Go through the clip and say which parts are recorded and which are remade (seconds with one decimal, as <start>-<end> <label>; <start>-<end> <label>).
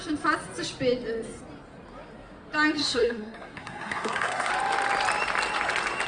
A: 0.0-2.8 recorded; 2.8-4.5 remade; 4.5-6.1 recorded